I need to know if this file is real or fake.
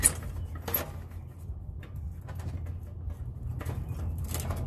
real